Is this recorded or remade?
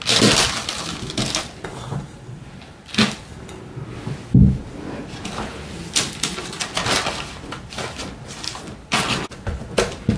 recorded